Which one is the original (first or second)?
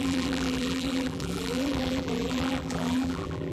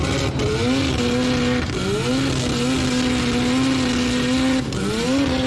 second